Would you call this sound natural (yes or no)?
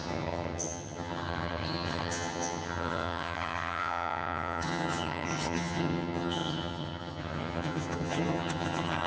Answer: no